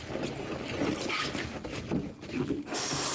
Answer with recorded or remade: recorded